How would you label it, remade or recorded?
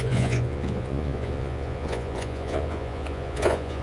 remade